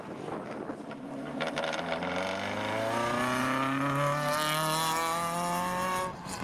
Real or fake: real